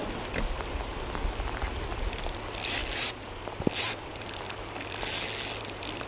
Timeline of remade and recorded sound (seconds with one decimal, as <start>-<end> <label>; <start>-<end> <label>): 0.0-6.1 recorded